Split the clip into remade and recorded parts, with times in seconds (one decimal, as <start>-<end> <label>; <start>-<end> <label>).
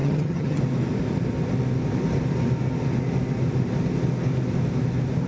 0.0-0.6 remade; 0.6-5.3 recorded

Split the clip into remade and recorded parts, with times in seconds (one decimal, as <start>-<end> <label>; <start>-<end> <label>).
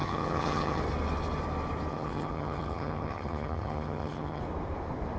0.0-0.8 remade; 0.8-1.9 recorded; 1.9-4.4 remade; 4.4-5.2 recorded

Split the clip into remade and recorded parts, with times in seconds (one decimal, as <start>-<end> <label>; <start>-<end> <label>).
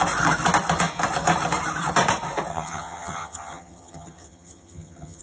0.0-2.5 recorded; 2.5-5.2 remade